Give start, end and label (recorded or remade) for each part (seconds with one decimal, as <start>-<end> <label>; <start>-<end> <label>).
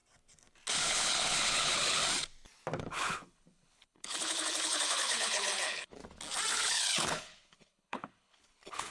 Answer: 0.0-0.7 recorded; 0.7-2.0 remade; 2.0-2.8 recorded; 2.8-6.0 remade; 6.0-6.5 recorded; 6.5-8.9 remade